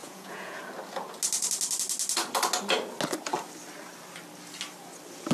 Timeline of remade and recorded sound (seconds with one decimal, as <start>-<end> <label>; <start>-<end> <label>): 0.0-0.6 remade; 0.6-5.3 recorded

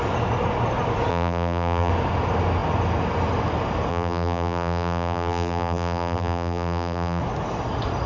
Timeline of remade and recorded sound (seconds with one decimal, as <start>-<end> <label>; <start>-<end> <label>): 0.0-1.1 recorded; 1.1-1.9 remade; 1.9-3.9 recorded; 3.9-7.2 remade; 7.2-8.1 recorded